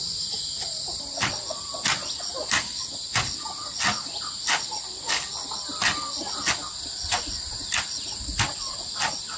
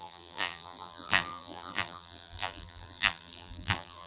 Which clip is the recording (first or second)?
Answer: first